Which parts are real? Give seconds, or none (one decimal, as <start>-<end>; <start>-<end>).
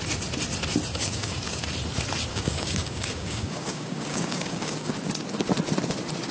0.0-0.9; 1.6-2.3; 4.9-6.3